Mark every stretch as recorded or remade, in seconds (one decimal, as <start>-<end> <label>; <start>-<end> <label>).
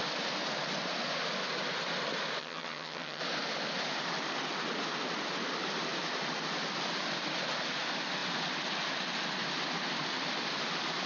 0.0-2.4 recorded; 2.4-3.2 remade; 3.2-11.1 recorded